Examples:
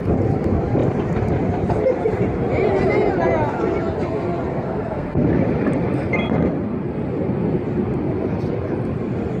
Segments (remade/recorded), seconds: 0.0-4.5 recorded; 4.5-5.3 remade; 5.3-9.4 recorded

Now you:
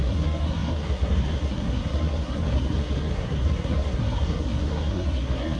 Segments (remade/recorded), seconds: 0.0-5.6 remade

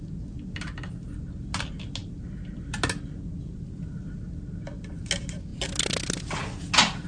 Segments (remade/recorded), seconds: 0.0-7.1 recorded

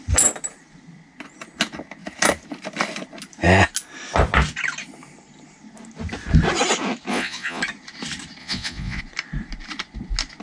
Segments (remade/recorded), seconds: 0.0-7.1 recorded; 7.1-7.6 remade; 7.6-8.4 recorded; 8.4-9.0 remade; 9.0-10.4 recorded